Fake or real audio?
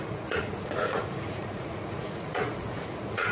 fake